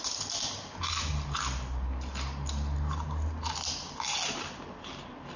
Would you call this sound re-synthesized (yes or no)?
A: no